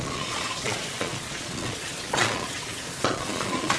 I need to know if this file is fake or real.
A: fake